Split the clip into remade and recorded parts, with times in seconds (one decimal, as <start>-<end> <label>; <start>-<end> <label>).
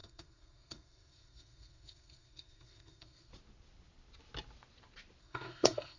0.0-3.3 remade; 3.3-5.2 recorded; 5.2-6.0 remade